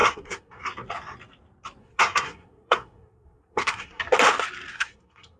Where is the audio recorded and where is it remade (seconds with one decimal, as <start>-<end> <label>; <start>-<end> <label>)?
0.0-0.6 remade; 0.6-1.8 recorded; 1.8-4.0 remade; 4.0-4.7 recorded; 4.7-5.4 remade